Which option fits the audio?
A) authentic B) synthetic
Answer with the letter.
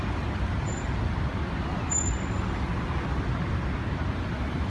A